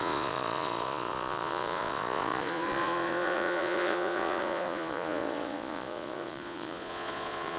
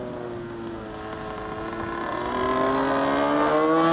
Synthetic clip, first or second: first